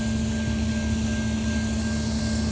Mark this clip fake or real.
real